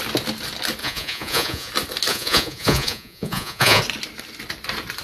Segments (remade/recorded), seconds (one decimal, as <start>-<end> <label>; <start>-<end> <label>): 0.0-0.8 recorded; 0.8-1.7 remade; 1.7-2.1 recorded; 2.1-3.8 remade; 3.8-5.0 recorded